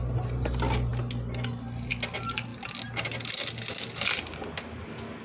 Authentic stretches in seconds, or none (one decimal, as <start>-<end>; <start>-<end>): 0.0-5.2